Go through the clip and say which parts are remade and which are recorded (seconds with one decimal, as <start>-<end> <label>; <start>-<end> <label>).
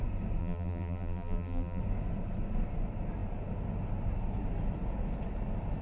0.0-0.4 recorded; 0.4-1.8 remade; 1.8-5.8 recorded